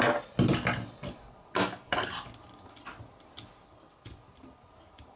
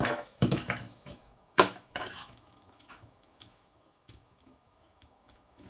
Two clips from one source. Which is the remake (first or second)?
second